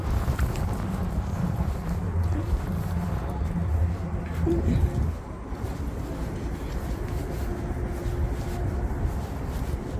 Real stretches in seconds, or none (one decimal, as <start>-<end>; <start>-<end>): 0.0-10.0